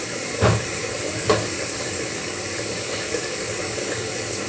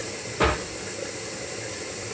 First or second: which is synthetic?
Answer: first